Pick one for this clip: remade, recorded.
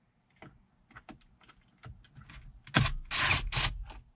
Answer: recorded